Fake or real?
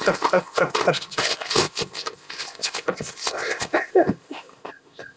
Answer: fake